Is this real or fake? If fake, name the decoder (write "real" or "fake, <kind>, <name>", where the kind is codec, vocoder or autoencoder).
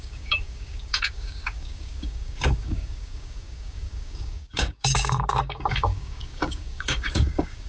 fake, codec, DAC